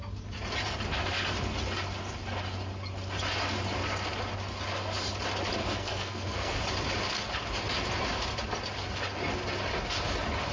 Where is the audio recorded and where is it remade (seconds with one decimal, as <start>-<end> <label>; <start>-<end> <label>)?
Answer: 0.0-5.6 recorded; 5.6-6.6 remade; 6.6-10.5 recorded